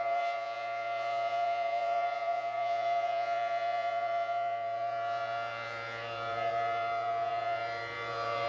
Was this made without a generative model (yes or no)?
no